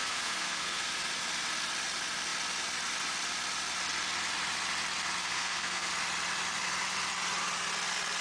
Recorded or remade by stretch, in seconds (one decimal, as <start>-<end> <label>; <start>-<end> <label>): 0.0-0.8 remade; 0.8-5.2 recorded; 5.2-5.9 remade; 5.9-8.2 recorded